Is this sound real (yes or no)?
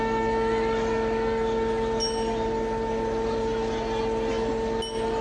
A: yes